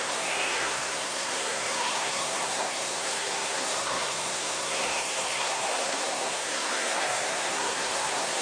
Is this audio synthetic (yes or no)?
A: yes